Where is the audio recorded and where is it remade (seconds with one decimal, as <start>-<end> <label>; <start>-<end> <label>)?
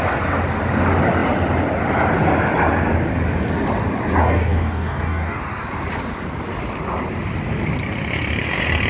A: 0.0-4.2 recorded; 4.2-5.4 remade; 5.4-8.9 recorded